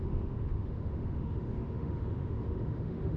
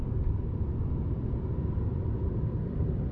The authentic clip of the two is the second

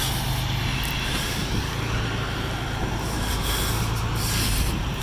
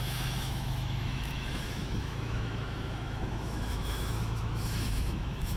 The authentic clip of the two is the first